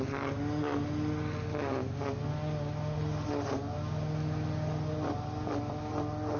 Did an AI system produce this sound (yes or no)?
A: no